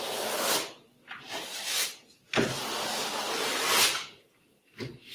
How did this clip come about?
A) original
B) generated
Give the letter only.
A